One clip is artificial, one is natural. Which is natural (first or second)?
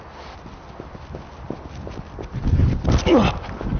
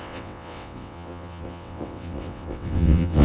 first